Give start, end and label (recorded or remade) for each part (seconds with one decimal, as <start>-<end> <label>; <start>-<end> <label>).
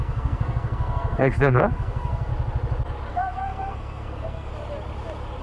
0.0-2.3 remade; 2.3-3.1 recorded; 3.1-4.5 remade; 4.5-5.4 recorded